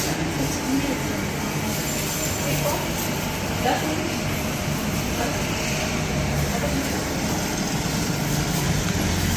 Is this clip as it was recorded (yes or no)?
yes